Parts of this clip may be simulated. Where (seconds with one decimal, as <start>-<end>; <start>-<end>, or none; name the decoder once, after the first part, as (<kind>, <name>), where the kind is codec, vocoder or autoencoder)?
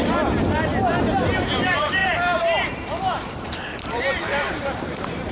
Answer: 1.1-5.3 (vocoder, BigVGAN v2)